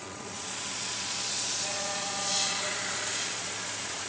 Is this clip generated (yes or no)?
yes